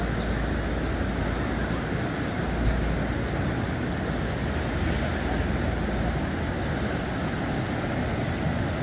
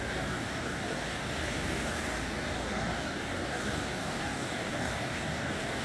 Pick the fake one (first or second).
second